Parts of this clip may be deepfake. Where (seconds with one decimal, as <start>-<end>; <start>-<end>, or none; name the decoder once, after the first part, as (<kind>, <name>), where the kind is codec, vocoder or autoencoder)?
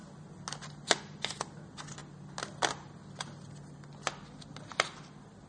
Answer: none